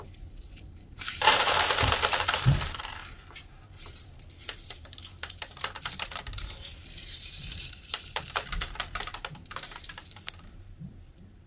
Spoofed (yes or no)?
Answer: yes